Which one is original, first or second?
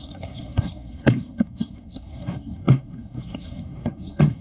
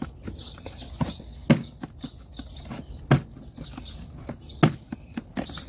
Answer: second